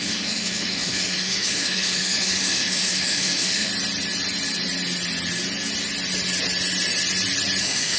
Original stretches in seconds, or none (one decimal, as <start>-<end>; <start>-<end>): 3.7-7.6